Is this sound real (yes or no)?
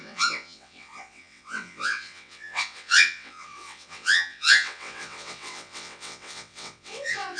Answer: no